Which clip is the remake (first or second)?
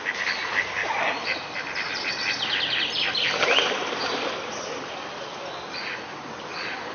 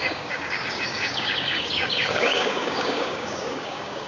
second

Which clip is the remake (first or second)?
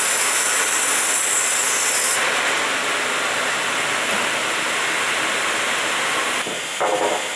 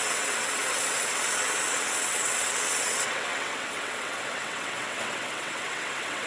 second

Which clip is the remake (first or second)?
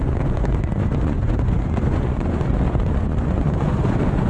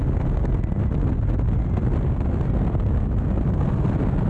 first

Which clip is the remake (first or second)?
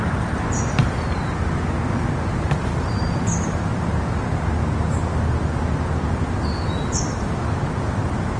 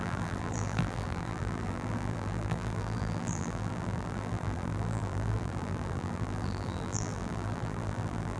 second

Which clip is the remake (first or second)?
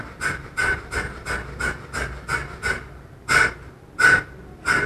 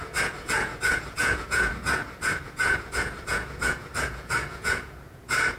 second